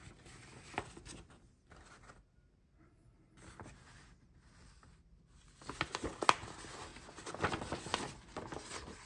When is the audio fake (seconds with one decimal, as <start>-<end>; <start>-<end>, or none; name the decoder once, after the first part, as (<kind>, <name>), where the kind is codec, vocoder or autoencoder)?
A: none